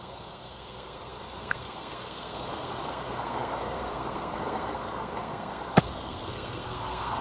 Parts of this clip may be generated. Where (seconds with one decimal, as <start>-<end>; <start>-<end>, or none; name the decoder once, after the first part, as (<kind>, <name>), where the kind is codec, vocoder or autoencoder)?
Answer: 0.0-7.2 (codec, SNAC)